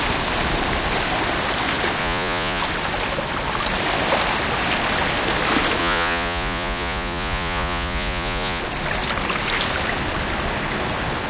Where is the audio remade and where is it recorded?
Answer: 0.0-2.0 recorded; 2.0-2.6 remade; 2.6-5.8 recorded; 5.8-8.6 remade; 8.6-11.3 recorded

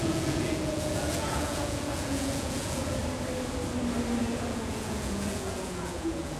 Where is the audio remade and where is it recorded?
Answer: 0.0-3.0 remade; 3.0-4.2 recorded; 4.2-6.4 remade

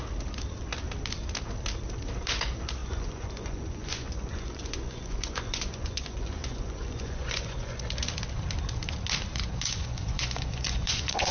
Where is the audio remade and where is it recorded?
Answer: 0.0-2.8 recorded; 2.8-7.8 remade; 7.8-9.3 recorded; 9.3-11.3 remade